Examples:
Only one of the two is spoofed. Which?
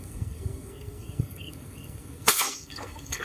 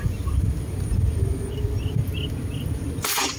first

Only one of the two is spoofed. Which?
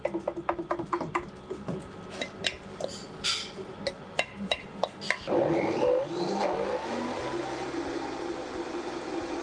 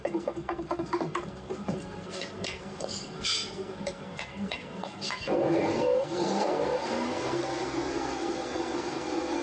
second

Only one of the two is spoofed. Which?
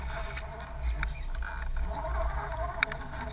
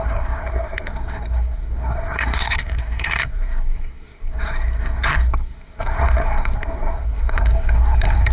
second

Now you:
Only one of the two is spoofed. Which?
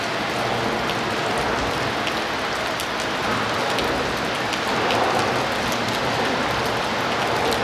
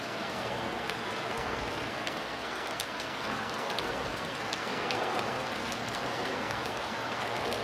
second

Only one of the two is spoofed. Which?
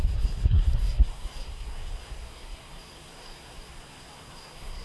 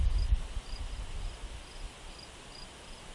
first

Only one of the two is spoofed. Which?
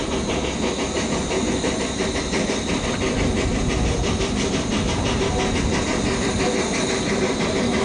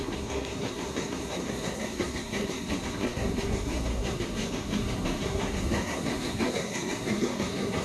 second